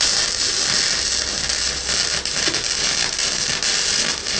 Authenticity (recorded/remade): recorded